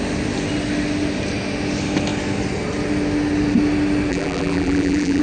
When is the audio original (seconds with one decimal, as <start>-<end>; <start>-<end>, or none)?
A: 0.0-4.1